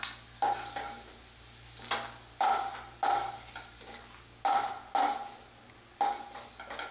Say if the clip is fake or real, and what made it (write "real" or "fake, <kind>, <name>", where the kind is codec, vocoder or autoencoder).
real